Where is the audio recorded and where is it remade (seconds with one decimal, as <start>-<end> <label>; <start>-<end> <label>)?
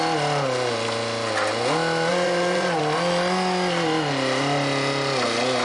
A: 0.0-2.1 recorded; 2.1-2.8 remade; 2.8-5.6 recorded